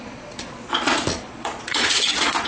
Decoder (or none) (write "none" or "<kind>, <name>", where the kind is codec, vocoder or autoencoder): vocoder, Vocos